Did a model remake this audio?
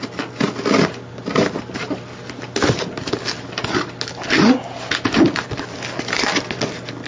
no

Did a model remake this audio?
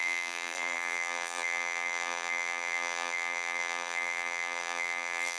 yes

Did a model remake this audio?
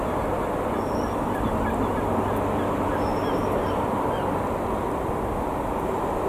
yes